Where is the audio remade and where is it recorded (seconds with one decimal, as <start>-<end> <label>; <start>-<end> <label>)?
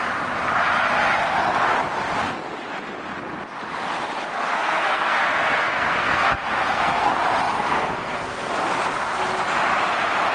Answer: 0.0-4.3 recorded; 4.3-7.1 remade; 7.1-7.6 recorded; 7.6-8.5 remade; 8.5-10.3 recorded